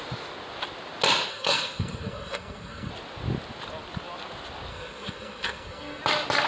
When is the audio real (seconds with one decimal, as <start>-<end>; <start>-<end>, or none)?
0.0-1.3; 2.9-4.7; 6.0-6.5